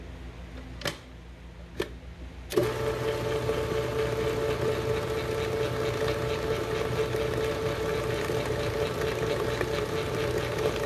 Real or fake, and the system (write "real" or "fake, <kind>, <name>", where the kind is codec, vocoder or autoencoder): real